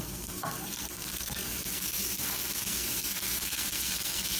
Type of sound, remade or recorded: remade